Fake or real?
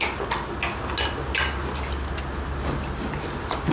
real